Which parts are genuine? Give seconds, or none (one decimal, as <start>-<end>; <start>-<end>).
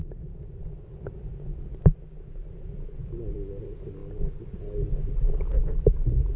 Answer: 0.0-1.5; 3.6-4.0; 4.6-6.4